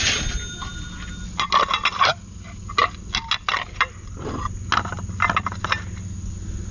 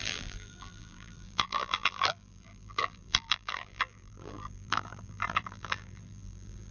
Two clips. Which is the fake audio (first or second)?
second